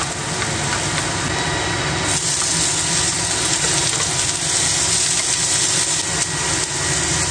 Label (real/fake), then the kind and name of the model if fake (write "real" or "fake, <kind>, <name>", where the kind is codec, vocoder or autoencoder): real